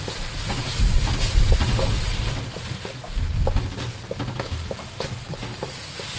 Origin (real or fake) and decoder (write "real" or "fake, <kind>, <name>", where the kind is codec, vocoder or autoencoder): real